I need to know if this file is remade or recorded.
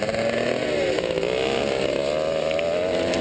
recorded